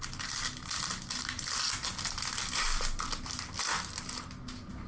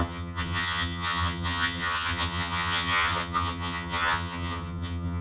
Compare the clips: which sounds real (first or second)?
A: first